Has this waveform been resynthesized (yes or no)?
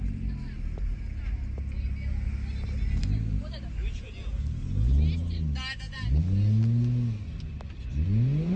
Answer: no